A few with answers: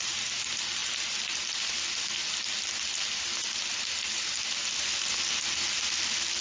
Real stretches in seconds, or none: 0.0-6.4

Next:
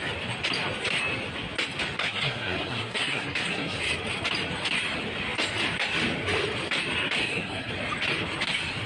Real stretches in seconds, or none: 0.0-2.0; 3.8-7.2; 7.7-8.9